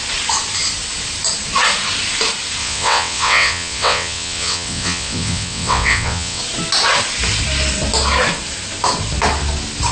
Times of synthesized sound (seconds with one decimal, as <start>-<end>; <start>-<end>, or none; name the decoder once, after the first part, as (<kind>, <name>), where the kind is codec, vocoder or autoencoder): 2.6-6.4 (vocoder, WaveNeXt)